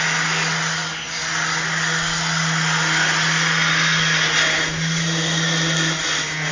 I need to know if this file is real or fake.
real